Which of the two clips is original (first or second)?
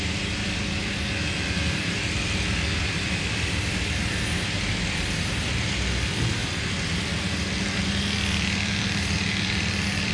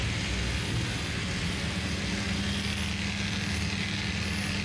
second